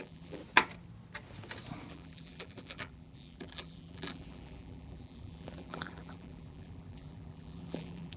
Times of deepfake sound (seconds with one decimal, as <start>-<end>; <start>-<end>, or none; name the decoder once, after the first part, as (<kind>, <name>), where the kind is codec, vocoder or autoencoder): 0.0-0.4 (vocoder, BigVGAN v2); 1.9-8.2